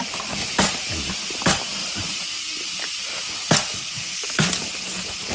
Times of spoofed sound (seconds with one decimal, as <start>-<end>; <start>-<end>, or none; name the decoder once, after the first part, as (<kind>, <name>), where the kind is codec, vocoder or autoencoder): 1.8-3.2 (vocoder, BigVGAN v2)